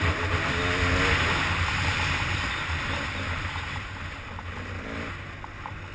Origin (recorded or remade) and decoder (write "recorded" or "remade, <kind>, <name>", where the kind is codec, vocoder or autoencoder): recorded